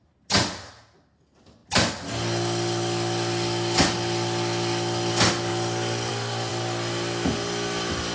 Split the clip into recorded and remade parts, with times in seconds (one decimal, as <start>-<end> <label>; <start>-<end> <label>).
0.0-8.1 recorded